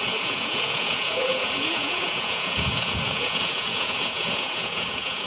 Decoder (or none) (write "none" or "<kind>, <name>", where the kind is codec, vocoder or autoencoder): vocoder, Vocos